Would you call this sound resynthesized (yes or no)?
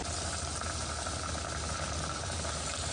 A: no